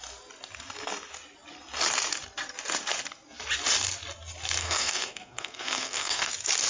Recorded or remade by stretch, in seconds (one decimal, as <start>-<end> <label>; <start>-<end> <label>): 0.0-4.6 recorded; 4.6-6.3 remade; 6.3-6.7 recorded